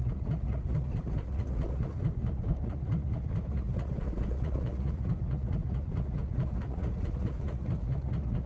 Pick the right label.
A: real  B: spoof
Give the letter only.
B